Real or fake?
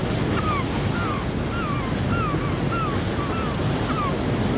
real